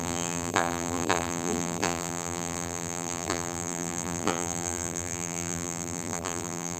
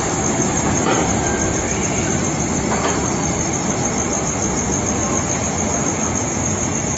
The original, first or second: second